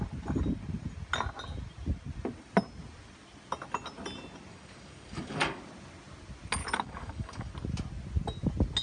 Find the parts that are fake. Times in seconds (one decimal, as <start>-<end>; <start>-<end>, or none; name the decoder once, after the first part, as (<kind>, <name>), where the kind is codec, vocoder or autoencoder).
4.5-5.6 (codec, DAC); 6.6-7.5